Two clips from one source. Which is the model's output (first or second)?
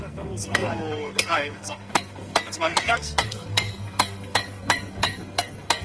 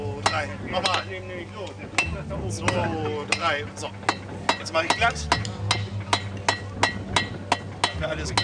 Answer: first